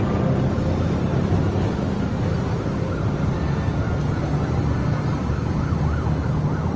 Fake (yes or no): no